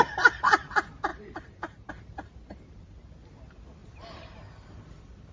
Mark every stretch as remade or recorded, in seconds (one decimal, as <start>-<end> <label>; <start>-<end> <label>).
0.0-1.1 recorded; 1.1-1.9 remade; 1.9-3.8 recorded; 3.8-4.3 remade; 4.3-5.3 recorded